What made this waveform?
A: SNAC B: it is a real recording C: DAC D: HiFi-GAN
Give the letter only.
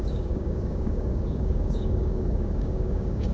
C